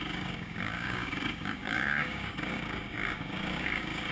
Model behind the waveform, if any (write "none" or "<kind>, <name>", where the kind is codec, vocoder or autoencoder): codec, DAC